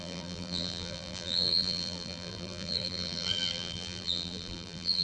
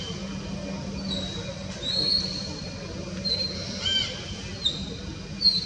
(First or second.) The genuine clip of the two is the second